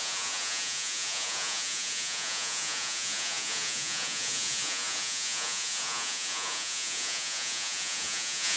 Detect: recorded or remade remade